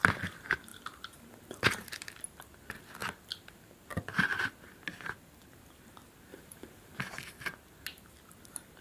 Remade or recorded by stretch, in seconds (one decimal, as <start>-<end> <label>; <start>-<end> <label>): 0.0-0.7 recorded; 0.7-2.2 remade; 2.2-6.3 recorded; 6.3-7.0 remade; 7.0-8.8 recorded